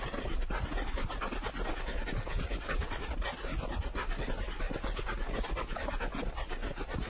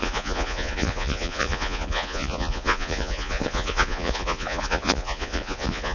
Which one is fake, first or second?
second